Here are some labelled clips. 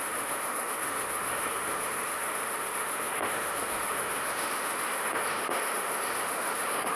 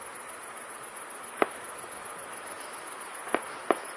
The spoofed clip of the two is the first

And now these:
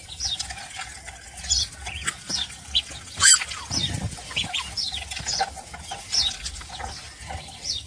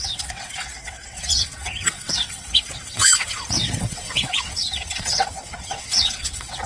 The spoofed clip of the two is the second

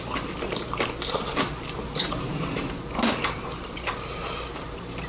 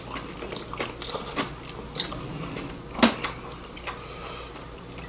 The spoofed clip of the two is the first